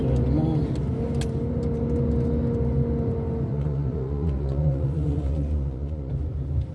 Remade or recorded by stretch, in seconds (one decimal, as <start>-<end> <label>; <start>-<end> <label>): 0.0-3.5 recorded; 3.5-6.1 remade; 6.1-6.7 recorded